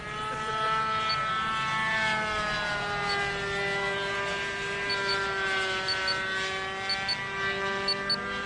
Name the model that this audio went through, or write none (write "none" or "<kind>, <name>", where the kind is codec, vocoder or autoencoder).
none